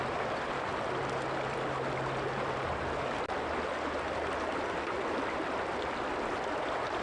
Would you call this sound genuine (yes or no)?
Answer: yes